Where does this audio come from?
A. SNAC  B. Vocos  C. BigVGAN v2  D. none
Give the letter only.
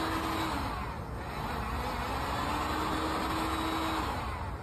D